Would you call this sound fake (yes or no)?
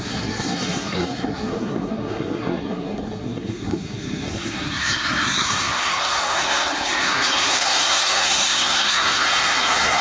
yes